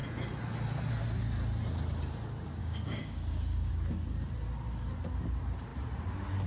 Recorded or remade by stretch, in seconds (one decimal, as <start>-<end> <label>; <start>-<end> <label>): 0.0-2.6 recorded; 2.6-3.7 remade; 3.7-6.5 recorded